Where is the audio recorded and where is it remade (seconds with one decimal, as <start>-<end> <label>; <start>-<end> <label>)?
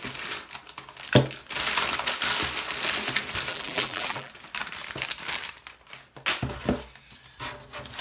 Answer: 0.0-3.5 recorded; 3.5-4.3 remade; 4.3-8.0 recorded